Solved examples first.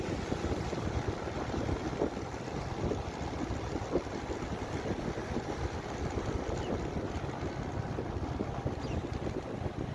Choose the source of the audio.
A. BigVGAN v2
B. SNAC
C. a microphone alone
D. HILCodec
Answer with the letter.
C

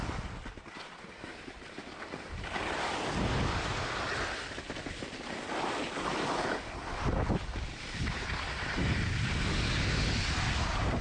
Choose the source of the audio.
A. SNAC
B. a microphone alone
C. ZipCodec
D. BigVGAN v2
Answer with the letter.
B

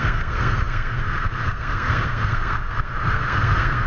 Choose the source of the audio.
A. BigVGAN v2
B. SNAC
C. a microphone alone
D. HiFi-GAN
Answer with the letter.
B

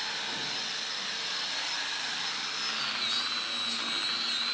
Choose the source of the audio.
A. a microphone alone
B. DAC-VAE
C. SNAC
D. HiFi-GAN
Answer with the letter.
A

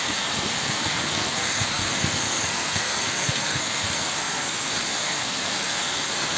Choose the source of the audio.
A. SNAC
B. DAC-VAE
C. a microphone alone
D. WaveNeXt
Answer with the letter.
A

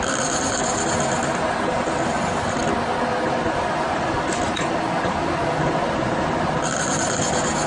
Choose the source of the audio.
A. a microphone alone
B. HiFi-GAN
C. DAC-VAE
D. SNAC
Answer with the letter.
A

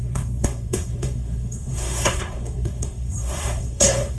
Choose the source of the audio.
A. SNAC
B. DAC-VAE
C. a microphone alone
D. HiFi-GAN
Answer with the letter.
A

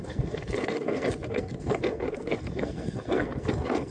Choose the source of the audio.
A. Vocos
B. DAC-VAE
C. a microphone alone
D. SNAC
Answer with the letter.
D